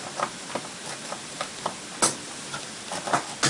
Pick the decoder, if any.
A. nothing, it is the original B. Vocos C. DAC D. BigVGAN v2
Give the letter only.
A